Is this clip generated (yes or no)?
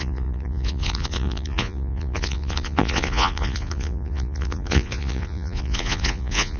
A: yes